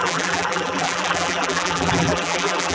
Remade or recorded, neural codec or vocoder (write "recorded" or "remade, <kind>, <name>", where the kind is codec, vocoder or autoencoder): remade, vocoder, BigVGAN v2